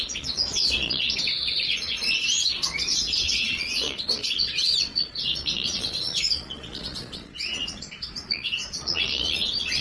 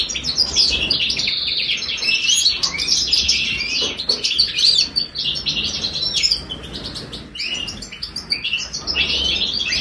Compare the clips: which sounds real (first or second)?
second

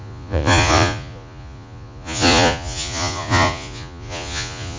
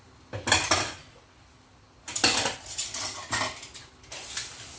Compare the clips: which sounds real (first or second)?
second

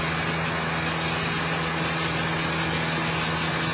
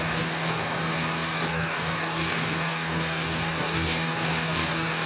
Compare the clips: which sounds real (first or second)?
first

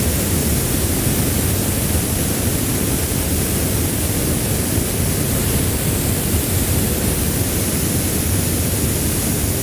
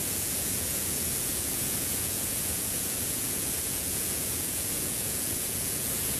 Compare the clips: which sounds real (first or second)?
first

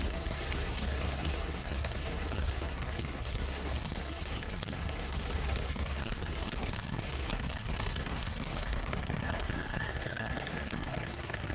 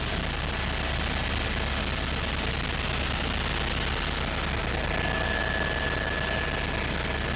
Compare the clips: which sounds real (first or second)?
second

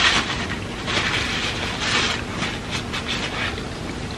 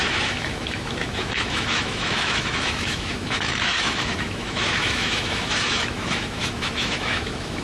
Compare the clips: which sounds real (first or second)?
first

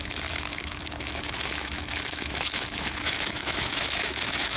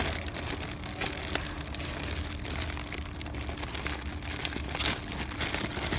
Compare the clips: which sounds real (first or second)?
second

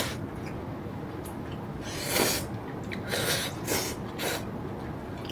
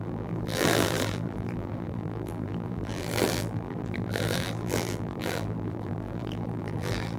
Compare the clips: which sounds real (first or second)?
first